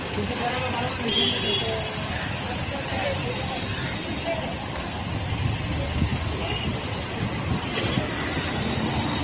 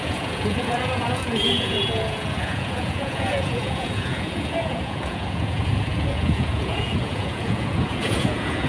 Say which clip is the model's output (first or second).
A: second